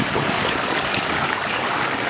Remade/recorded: remade